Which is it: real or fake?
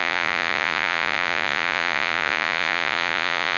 fake